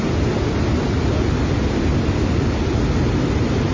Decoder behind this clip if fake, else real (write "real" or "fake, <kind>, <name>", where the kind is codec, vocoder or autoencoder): real